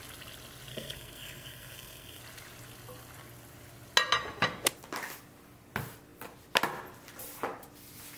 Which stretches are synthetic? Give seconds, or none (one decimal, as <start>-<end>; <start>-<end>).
0.7-2.2